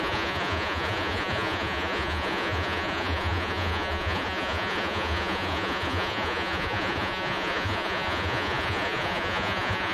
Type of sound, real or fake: fake